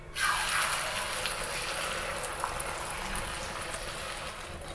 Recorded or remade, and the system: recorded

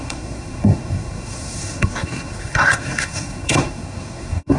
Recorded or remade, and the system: remade, codec, SNAC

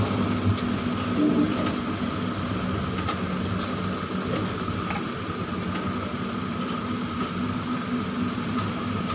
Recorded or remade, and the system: recorded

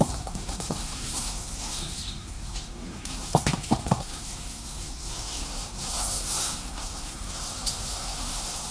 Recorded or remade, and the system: remade, codec, SNAC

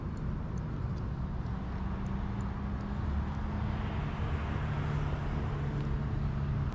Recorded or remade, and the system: recorded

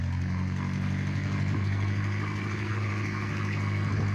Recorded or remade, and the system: remade, codec, SNAC